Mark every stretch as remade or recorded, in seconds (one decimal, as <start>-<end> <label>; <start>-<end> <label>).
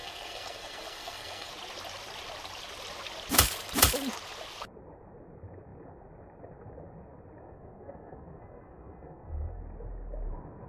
0.0-1.5 remade; 1.5-7.4 recorded; 7.4-9.6 remade; 9.6-10.7 recorded